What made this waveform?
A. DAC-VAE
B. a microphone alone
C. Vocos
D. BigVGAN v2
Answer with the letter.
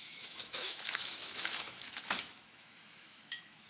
A